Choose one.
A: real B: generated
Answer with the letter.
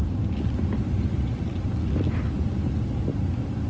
A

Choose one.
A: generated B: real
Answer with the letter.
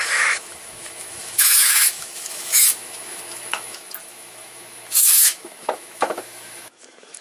A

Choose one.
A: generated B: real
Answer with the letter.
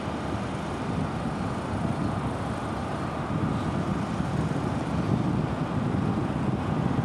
B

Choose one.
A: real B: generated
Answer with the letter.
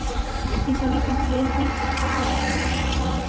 B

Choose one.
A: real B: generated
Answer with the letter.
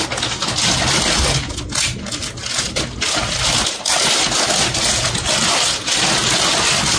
A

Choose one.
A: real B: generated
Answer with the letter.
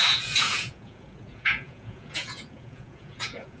B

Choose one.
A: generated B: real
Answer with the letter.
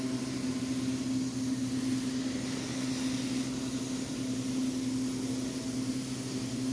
B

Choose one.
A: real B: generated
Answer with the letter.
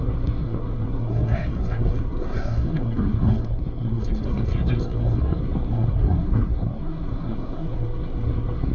B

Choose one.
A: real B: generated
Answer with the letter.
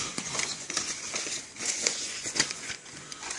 B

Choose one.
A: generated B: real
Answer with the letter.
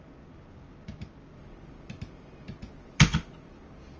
B